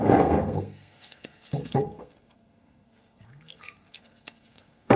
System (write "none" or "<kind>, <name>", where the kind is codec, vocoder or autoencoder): codec, SNAC